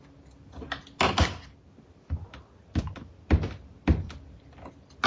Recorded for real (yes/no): yes